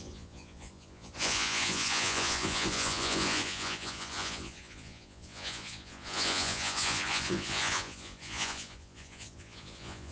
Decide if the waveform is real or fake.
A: fake